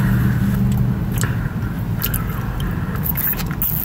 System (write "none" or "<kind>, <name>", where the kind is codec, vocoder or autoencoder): none